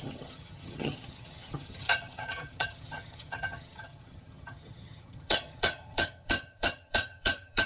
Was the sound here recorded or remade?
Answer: remade